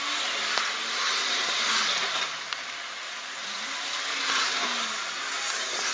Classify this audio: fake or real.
real